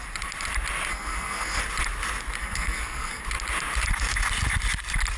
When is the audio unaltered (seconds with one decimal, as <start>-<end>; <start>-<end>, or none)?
0.0-0.9; 1.6-2.4; 3.2-5.2